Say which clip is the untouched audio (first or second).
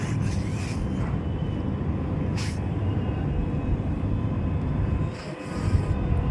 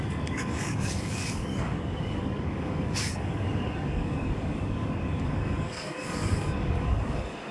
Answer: first